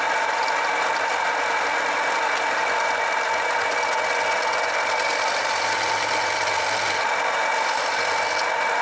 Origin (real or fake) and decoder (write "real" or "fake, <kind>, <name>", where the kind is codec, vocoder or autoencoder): real